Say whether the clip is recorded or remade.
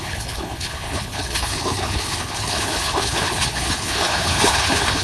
remade